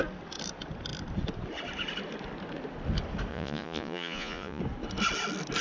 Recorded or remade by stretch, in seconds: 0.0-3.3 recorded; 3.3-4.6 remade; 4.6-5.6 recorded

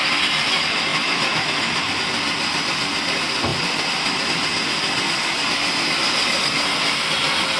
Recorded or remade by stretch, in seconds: 0.0-0.9 recorded; 0.9-1.9 remade; 1.9-7.6 recorded

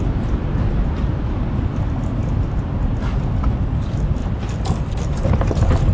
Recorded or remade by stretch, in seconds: 0.0-5.9 recorded

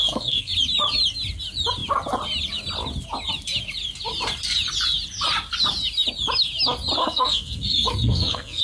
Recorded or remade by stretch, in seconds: 0.0-0.5 remade; 0.5-7.0 recorded; 7.0-8.6 remade